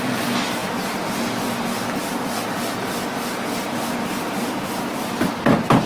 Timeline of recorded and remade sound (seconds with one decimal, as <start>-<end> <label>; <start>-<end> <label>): 0.0-5.9 recorded